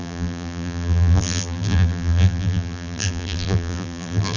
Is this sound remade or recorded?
remade